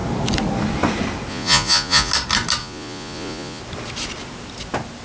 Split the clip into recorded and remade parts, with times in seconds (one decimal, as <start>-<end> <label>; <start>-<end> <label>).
0.0-1.3 recorded; 1.3-2.1 remade; 2.1-2.6 recorded; 2.6-3.6 remade; 3.6-5.0 recorded